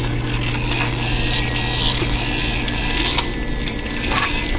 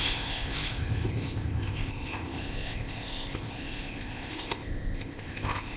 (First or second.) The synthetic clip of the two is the second